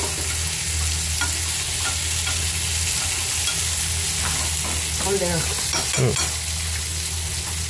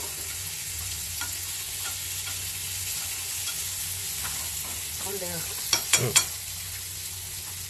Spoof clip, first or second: second